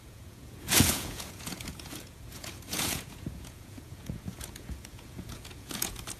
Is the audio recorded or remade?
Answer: remade